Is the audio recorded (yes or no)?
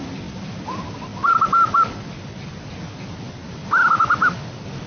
yes